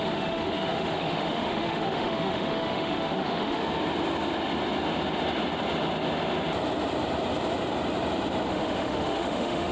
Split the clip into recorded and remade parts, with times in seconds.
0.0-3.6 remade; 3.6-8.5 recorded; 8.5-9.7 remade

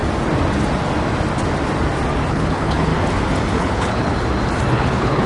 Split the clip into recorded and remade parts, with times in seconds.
0.0-2.3 recorded; 2.3-2.9 remade; 2.9-3.6 recorded; 3.6-4.1 remade; 4.1-4.7 recorded; 4.7-5.3 remade

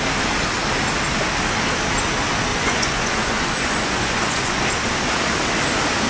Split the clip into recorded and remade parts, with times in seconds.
0.0-2.5 recorded; 2.5-4.6 remade; 4.6-6.1 recorded

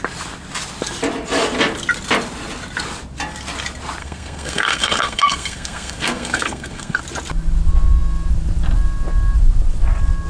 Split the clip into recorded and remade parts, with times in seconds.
0.0-4.0 recorded; 4.0-7.0 remade; 7.0-10.3 recorded